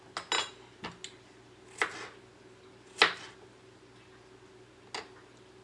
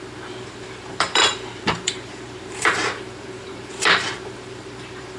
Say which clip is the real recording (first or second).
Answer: first